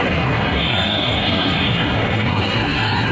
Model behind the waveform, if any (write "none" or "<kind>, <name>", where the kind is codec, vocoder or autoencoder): codec, SNAC